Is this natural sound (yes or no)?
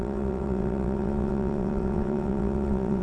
no